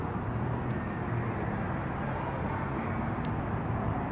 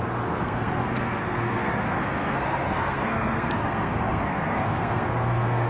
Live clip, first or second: first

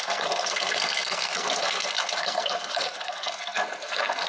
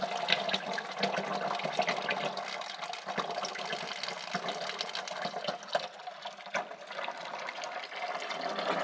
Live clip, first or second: second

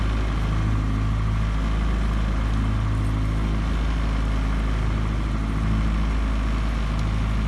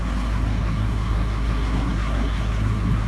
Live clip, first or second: first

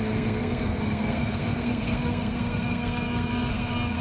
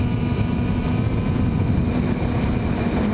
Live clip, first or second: second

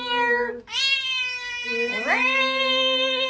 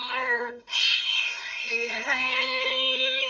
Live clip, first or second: first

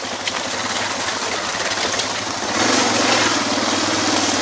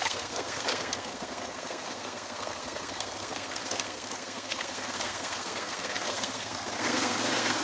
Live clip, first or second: first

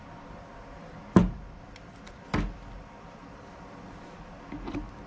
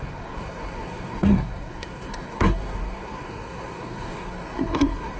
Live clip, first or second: first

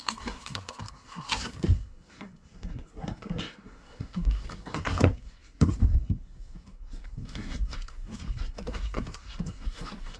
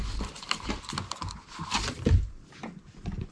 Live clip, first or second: second